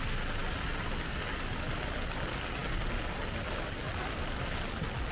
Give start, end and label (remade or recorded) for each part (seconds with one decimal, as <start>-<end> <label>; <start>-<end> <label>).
0.0-5.1 recorded

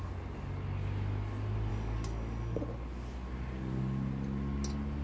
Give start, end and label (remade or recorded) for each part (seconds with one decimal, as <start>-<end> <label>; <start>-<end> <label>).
0.0-1.7 recorded; 1.7-2.6 remade; 2.6-5.0 recorded

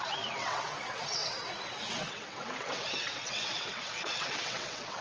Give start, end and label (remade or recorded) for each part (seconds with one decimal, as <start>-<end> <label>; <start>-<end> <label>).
0.0-5.0 remade

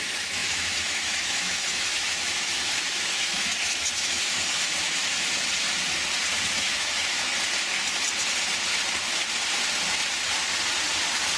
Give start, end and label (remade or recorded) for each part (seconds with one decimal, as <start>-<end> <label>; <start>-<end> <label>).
0.0-5.0 remade; 5.0-6.4 recorded; 6.4-7.3 remade; 7.3-11.4 recorded

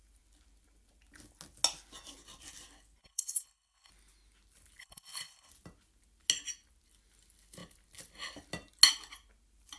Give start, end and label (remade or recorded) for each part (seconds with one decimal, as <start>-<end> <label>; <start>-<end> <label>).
0.0-3.0 recorded; 3.0-3.9 remade; 3.9-4.8 recorded; 4.8-5.5 remade; 5.5-9.8 recorded

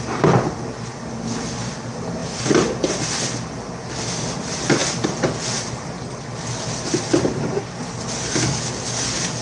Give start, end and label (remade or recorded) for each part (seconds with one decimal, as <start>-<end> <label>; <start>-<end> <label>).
0.0-9.4 recorded